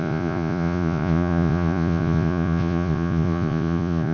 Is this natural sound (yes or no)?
no